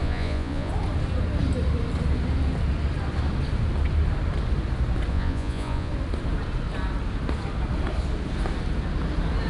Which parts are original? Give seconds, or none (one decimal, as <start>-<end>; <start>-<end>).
0.7-5.1; 5.9-9.5